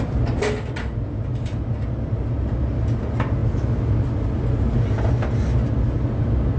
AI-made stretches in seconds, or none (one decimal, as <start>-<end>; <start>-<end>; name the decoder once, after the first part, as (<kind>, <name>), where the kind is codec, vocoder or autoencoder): none